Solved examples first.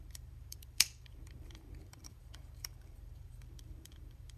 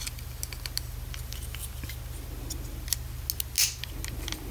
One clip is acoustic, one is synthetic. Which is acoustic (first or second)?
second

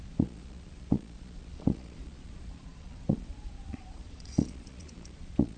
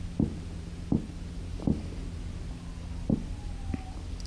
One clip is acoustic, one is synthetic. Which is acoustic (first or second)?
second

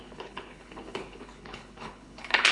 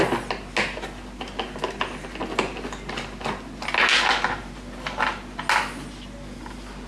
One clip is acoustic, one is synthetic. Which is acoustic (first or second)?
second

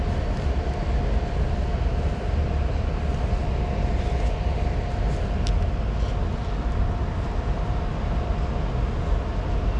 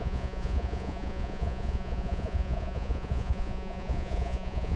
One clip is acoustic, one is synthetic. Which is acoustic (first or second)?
first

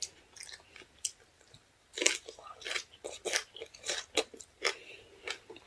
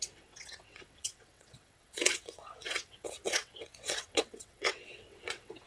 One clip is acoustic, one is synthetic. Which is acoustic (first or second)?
first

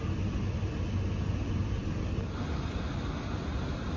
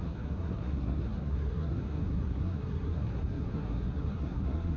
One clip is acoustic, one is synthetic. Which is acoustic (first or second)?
first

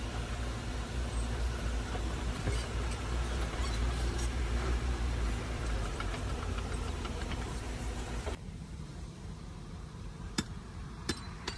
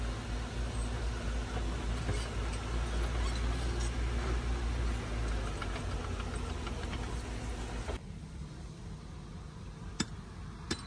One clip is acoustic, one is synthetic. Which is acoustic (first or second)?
second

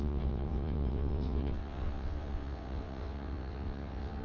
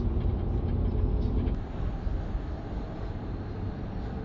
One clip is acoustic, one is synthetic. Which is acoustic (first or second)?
second